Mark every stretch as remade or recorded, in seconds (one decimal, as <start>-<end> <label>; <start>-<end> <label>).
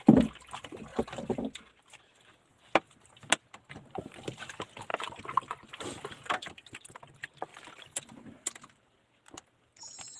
0.0-10.2 recorded